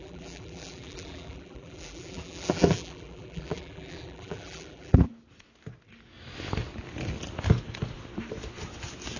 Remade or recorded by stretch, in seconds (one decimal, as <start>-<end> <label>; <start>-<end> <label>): 0.0-5.1 remade; 5.1-9.2 recorded